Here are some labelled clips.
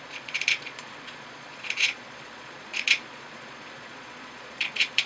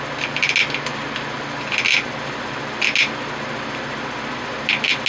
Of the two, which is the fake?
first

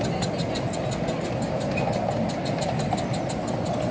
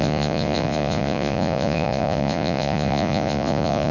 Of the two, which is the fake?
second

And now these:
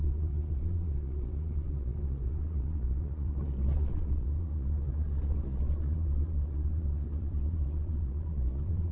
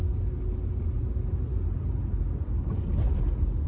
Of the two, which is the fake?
first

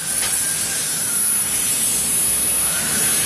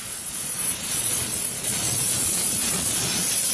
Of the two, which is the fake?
second